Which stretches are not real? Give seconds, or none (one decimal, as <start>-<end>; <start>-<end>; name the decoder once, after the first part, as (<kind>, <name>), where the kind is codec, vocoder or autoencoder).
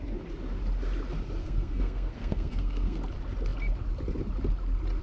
1.4-3.0 (codec, SNAC)